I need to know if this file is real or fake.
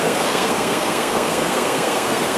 fake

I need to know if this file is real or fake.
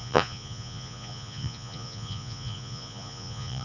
fake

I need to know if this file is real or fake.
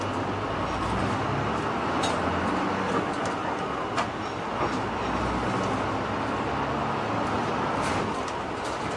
real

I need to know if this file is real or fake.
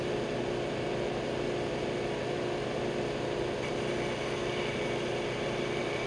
real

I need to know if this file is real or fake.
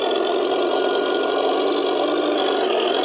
fake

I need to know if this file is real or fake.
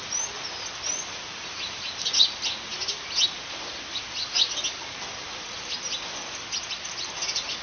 real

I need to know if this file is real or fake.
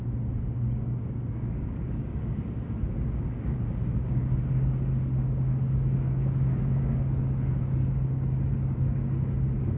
fake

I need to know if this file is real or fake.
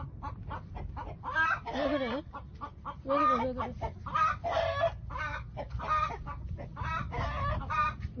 real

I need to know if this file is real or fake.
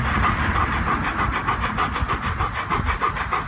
real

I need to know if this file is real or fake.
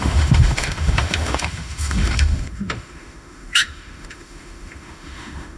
fake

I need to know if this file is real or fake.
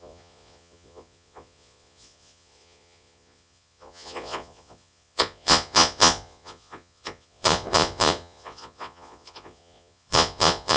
fake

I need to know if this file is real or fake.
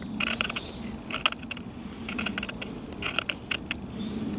real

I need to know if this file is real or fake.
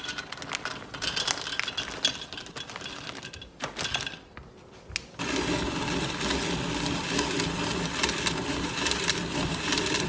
real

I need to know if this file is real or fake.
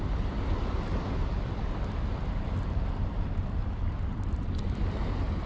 real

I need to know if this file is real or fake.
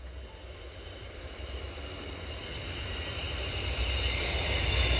fake